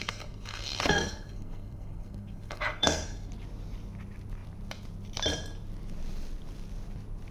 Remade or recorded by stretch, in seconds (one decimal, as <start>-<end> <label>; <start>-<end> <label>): 0.0-3.3 remade; 3.3-7.3 recorded

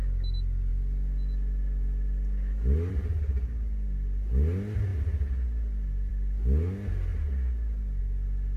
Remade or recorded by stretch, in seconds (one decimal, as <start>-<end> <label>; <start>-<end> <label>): 0.0-8.6 recorded

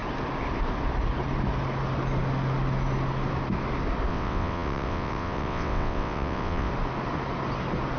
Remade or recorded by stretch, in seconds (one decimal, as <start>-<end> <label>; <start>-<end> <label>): 0.0-4.1 recorded; 4.1-6.7 remade; 6.7-8.0 recorded

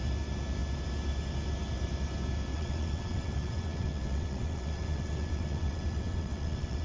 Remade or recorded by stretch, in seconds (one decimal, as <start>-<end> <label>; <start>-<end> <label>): 0.0-2.5 recorded; 2.5-6.8 remade

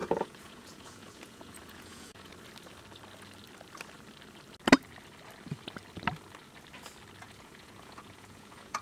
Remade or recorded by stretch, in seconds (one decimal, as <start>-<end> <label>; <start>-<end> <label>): 0.0-2.3 remade; 2.3-7.2 recorded; 7.2-8.8 remade

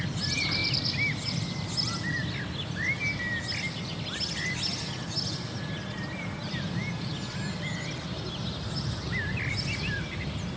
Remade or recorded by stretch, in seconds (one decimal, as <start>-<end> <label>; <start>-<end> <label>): 0.0-10.6 recorded